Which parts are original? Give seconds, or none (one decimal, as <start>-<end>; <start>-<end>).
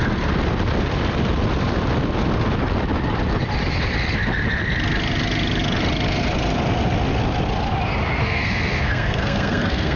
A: 0.0-8.2